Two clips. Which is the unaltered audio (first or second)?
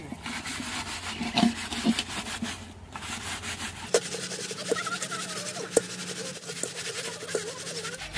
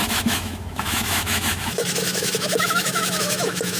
first